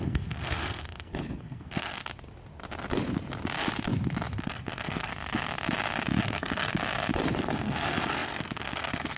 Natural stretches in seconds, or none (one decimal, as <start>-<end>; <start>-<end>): 2.1-4.4; 5.1-6.2; 6.7-7.4